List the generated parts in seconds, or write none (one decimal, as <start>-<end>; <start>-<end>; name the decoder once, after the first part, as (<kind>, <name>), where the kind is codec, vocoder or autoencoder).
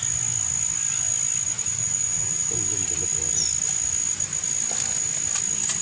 1.7-2.5 (vocoder, Vocos)